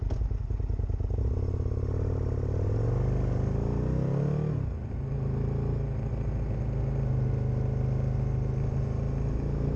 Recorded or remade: recorded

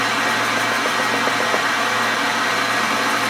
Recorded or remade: recorded